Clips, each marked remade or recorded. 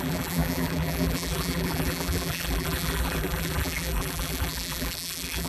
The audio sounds remade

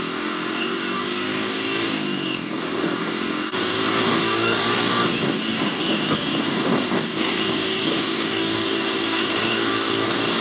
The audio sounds remade